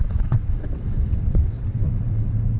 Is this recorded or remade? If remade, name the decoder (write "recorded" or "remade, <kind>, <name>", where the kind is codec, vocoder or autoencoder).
remade, vocoder, WaveNeXt